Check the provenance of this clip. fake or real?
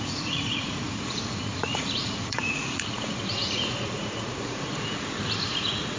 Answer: fake